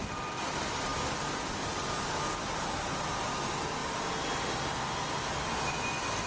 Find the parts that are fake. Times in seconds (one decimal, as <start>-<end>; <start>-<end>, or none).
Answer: none